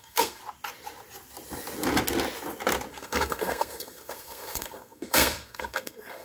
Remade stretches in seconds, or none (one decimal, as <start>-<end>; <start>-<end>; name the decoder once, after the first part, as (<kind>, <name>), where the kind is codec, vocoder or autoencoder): 0.0-0.4 (codec, SNAC); 2.9-6.2